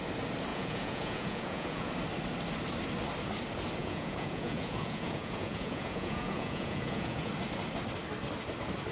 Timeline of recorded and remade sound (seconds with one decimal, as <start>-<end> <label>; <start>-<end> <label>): 0.0-0.5 recorded; 0.5-1.9 remade; 1.9-3.8 recorded; 3.8-7.3 remade; 7.3-8.9 recorded